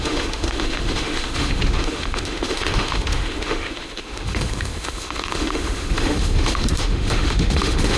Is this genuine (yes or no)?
no